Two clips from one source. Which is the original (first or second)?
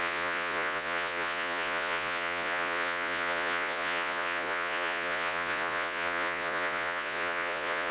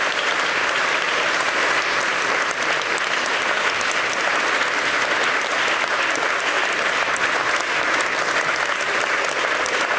second